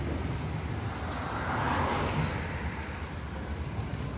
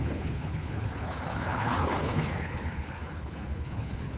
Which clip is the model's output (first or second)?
second